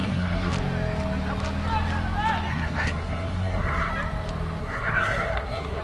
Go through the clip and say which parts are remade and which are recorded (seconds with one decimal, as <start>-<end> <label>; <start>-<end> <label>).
0.0-0.5 remade; 0.5-2.5 recorded; 2.5-3.9 remade; 3.9-4.6 recorded; 4.6-5.8 remade